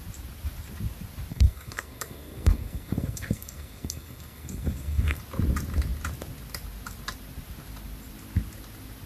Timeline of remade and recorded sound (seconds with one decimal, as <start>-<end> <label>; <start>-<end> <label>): 0.0-1.3 recorded; 1.3-5.2 remade; 5.2-9.1 recorded